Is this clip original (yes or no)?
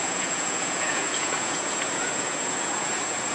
no